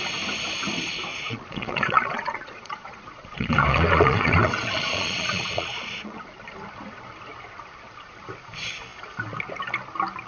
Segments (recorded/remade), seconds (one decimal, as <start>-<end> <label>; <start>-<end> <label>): 0.0-1.1 recorded; 1.1-6.2 remade; 6.2-10.3 recorded